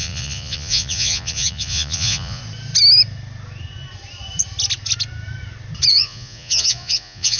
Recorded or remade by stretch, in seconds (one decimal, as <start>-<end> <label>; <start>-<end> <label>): 0.0-2.4 remade; 2.4-5.9 recorded; 5.9-7.4 remade

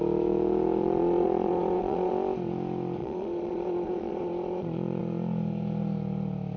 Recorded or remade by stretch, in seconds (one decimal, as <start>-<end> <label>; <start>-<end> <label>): 0.0-0.8 recorded; 0.8-2.1 remade; 2.1-3.0 recorded; 3.0-5.0 remade; 5.0-6.6 recorded

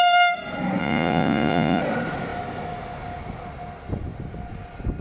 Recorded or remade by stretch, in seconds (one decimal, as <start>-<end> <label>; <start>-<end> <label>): 0.0-0.8 recorded; 0.8-1.8 remade; 1.8-5.0 recorded

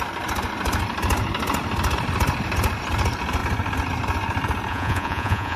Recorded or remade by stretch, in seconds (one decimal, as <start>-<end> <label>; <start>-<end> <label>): 0.0-4.7 recorded; 4.7-5.6 remade

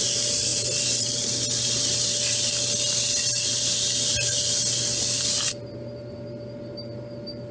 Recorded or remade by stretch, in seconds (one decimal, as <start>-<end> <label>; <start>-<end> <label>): 0.0-7.5 recorded

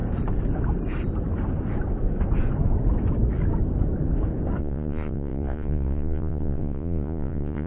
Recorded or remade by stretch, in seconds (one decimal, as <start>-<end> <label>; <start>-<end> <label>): 0.0-4.6 recorded; 4.6-7.7 remade

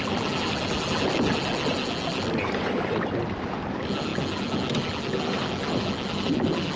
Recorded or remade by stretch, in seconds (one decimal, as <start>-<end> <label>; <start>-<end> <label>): 0.0-6.8 recorded

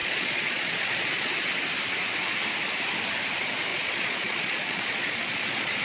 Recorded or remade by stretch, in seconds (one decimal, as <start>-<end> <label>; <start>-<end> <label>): 0.0-1.3 remade; 1.3-3.7 recorded; 3.7-5.8 remade